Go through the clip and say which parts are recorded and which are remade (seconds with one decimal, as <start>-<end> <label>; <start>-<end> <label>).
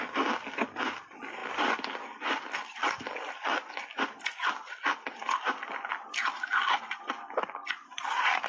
0.0-8.5 recorded